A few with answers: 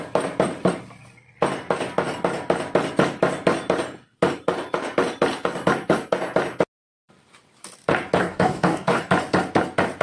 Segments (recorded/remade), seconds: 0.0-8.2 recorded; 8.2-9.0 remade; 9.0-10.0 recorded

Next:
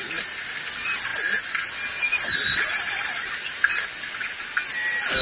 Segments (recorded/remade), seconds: 0.0-5.2 recorded

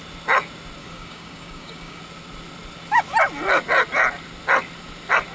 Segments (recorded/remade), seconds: 0.0-0.8 recorded; 0.8-2.0 remade; 2.0-5.3 recorded

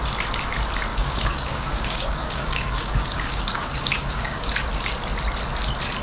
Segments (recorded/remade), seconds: 0.0-0.9 recorded; 0.9-4.5 remade; 4.5-6.0 recorded

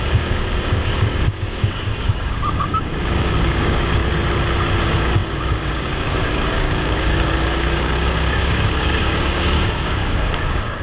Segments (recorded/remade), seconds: 0.0-4.0 remade; 4.0-4.8 recorded; 4.8-10.8 remade

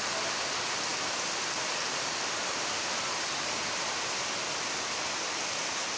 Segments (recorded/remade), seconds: 0.0-6.0 recorded

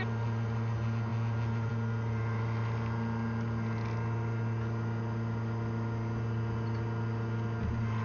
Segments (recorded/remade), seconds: 0.0-8.0 recorded

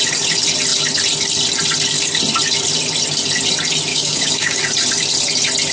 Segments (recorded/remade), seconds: 0.0-3.9 recorded; 3.9-4.6 remade; 4.6-5.7 recorded